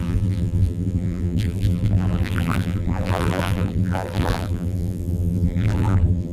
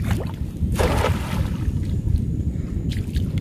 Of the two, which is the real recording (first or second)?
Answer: second